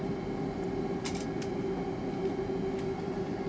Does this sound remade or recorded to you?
recorded